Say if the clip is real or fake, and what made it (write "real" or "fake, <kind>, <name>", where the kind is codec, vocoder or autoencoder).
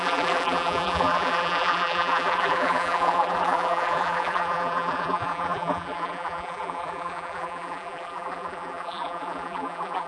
fake, vocoder, BigVGAN v2